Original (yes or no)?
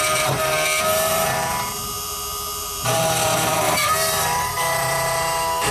no